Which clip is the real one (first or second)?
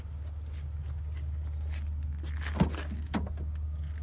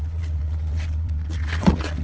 first